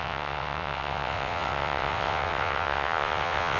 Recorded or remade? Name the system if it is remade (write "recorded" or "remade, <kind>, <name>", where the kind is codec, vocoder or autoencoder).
remade, vocoder, WaveNeXt